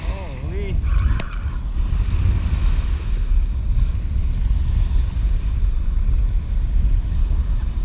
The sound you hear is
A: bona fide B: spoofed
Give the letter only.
A